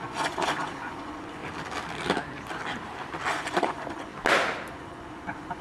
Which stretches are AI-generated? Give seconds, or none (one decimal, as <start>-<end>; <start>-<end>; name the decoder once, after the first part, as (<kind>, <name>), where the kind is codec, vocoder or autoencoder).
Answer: 0.0-1.4 (vocoder, Vocos); 3.3-4.1; 4.7-5.6

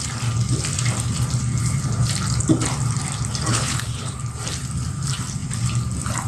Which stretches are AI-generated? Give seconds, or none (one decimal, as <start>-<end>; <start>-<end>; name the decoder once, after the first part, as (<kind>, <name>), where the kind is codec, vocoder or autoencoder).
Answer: 3.5-4.2 (codec, HILCodec)

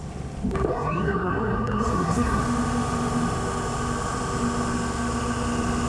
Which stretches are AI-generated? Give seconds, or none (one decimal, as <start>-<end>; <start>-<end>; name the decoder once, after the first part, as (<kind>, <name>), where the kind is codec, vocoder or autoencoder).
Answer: 0.7-2.4 (codec, SNAC)

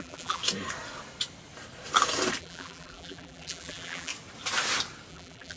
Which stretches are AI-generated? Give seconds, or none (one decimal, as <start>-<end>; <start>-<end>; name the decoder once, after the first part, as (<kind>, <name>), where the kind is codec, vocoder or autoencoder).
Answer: 0.0-0.4 (vocoder, BigVGAN v2); 2.4-4.1; 5.1-5.6

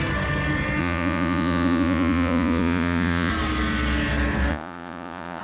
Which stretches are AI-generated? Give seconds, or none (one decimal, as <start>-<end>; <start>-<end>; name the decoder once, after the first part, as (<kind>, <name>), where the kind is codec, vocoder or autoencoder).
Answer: 0.8-3.3 (vocoder, Vocos); 4.5-5.4

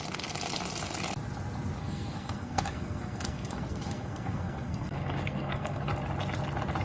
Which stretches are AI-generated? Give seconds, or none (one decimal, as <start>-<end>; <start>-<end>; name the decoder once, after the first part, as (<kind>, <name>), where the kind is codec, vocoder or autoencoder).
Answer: 1.8-5.9 (codec, SNAC)